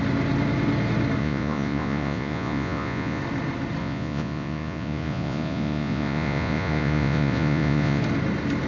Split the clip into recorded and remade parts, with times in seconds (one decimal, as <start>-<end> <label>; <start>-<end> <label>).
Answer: 0.0-1.2 recorded; 1.2-3.2 remade; 3.2-3.8 recorded; 3.8-8.0 remade; 8.0-8.7 recorded